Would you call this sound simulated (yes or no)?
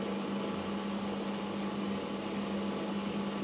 no